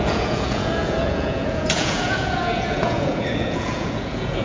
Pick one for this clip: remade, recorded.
remade